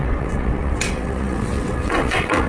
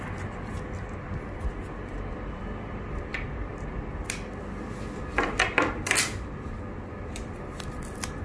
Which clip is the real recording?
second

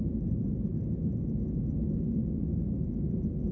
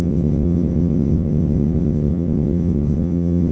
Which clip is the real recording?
first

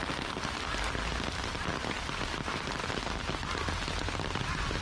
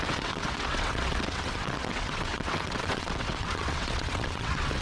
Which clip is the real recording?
first